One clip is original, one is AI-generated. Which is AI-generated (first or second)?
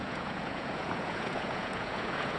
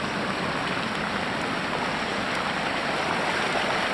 first